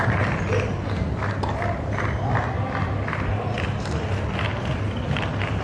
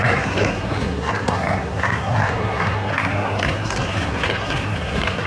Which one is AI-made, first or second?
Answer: second